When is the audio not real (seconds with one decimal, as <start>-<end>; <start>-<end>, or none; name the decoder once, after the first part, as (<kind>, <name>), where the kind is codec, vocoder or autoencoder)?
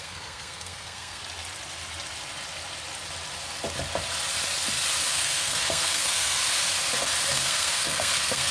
0.0-1.2 (codec, SNAC); 5.1-6.4; 7.3-8.5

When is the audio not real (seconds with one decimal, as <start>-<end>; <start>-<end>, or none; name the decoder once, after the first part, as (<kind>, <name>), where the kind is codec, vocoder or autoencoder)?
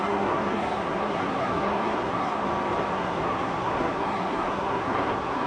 0.0-2.4 (codec, SNAC); 2.9-5.5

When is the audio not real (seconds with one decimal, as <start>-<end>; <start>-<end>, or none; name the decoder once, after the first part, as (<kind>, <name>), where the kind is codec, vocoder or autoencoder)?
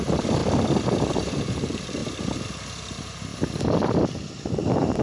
0.0-0.4 (vocoder, BigVGAN v2); 1.1-2.0; 2.8-3.3; 4.5-5.0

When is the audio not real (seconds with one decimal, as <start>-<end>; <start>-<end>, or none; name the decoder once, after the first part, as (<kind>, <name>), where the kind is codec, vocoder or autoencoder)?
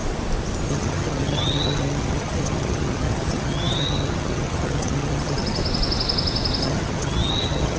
0.7-5.6 (vocoder, HiFi-GAN); 6.6-7.8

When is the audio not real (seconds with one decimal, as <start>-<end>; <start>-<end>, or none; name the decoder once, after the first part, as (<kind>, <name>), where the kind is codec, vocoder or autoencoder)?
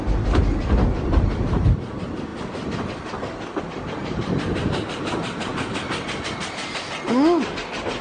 0.0-5.5 (vocoder, BigVGAN v2); 7.6-8.0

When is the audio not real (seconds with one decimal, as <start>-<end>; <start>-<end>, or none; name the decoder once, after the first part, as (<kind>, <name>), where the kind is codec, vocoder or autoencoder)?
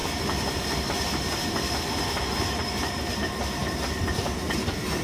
0.0-3.0 (vocoder, BigVGAN v2); 3.6-5.0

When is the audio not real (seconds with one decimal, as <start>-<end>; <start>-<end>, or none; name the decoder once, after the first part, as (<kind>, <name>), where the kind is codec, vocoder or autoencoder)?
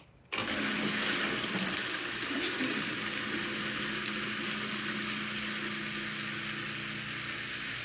none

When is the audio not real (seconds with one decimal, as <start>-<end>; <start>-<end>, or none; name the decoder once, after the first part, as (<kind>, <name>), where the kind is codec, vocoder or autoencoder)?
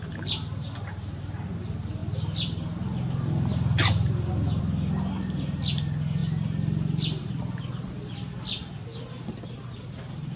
0.0-10.4 (vocoder, BigVGAN v2)